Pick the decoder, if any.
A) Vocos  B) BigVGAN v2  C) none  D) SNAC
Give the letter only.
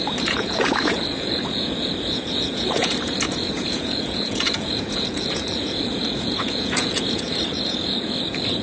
A